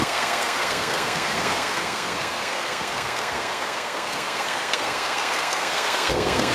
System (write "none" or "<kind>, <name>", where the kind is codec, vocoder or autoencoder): codec, SNAC